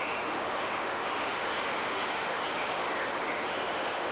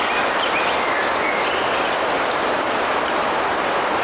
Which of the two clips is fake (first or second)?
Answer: first